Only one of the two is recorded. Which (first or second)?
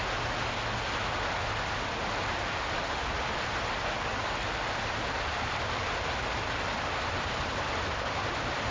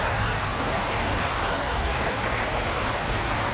first